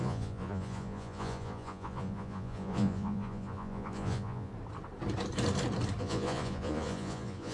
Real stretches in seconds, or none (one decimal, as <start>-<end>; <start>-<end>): 4.5-6.0